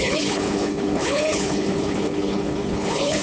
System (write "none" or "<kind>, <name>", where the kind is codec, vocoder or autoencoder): codec, HILCodec